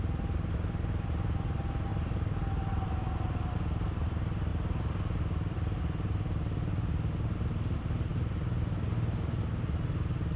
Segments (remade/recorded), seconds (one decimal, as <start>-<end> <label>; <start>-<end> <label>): 0.0-10.4 recorded

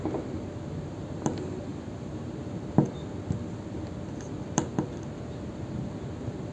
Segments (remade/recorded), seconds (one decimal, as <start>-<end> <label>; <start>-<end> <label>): 0.0-1.7 recorded; 1.7-2.7 remade; 2.7-6.5 recorded

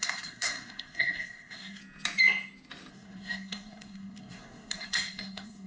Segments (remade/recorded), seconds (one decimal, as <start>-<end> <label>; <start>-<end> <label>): 0.0-1.8 remade; 1.8-2.9 recorded; 2.9-5.7 remade

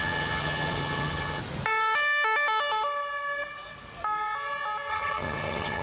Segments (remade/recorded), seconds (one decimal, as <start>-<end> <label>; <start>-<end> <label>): 0.0-1.4 remade; 1.4-4.9 recorded; 4.9-5.8 remade

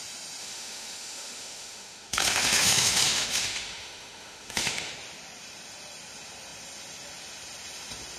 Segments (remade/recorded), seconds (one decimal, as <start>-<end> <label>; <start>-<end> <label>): 0.0-0.4 recorded; 0.4-4.9 remade; 4.9-8.2 recorded

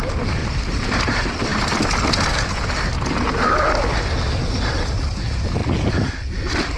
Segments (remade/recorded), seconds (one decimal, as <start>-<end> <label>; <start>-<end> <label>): 0.0-0.4 recorded; 0.4-0.9 remade; 0.9-6.8 recorded